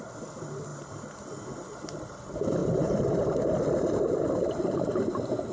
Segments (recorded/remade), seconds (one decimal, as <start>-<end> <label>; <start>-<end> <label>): 0.0-5.5 remade